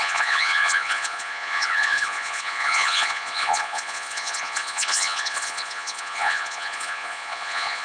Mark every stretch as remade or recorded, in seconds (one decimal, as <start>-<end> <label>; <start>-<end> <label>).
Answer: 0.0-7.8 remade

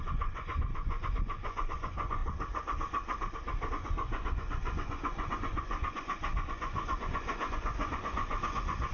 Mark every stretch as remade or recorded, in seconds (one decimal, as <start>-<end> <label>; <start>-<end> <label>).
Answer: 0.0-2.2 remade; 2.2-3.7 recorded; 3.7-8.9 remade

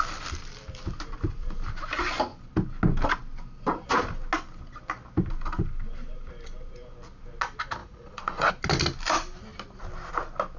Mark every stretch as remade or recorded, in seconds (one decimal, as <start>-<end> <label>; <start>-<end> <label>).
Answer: 0.0-7.8 recorded; 7.8-8.5 remade; 8.5-10.6 recorded